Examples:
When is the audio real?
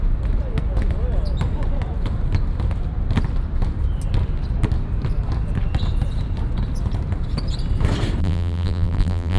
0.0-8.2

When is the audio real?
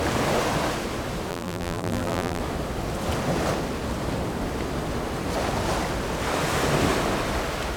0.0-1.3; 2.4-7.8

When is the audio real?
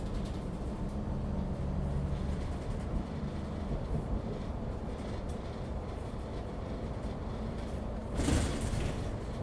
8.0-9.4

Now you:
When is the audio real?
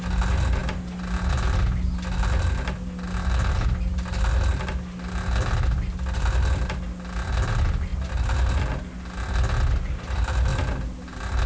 0.0-11.5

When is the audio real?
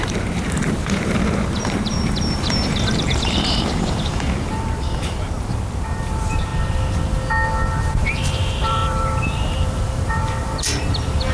6.5-7.8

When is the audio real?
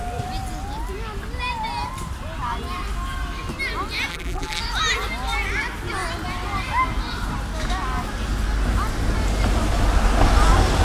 0.0-4.1; 4.6-10.8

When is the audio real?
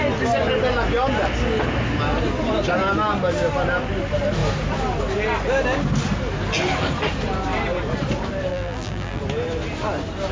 0.0-8.5; 9.2-10.3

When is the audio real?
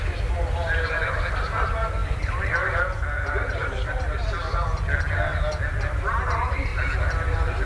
0.0-2.0; 2.7-3.6; 4.4-5.3; 5.8-7.7